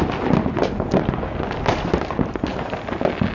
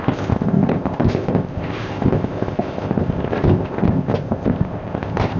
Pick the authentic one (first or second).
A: first